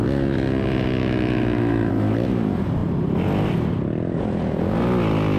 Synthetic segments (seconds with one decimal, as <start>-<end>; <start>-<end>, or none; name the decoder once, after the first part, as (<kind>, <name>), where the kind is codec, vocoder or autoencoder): 1.0-1.9 (autoencoder, DAC-VAE)

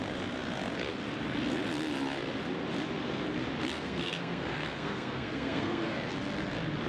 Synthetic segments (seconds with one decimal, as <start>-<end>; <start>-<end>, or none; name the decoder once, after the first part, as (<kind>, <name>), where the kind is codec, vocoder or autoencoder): 3.7-6.1 (codec, SNAC)

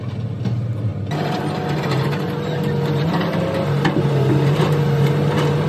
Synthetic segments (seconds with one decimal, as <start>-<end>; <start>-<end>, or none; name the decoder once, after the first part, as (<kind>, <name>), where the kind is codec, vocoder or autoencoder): none

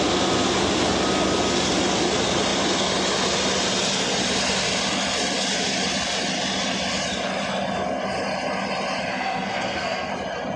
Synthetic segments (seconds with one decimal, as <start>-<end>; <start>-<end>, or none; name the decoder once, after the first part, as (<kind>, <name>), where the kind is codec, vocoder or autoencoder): 9.1-10.1 (codec, SNAC)

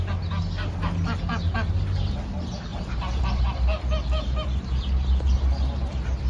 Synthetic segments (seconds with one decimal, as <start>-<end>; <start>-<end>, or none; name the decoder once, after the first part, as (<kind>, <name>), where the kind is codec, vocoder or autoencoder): 2.7-3.4 (vocoder, BigVGAN v2)